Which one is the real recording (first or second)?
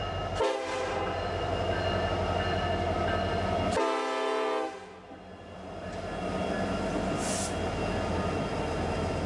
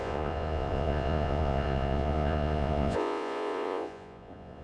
first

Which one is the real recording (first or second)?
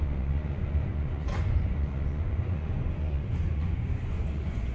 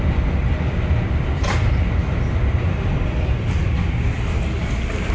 second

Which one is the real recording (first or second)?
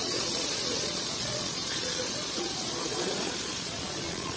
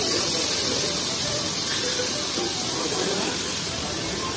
second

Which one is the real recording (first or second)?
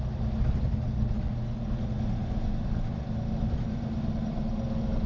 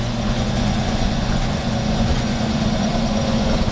first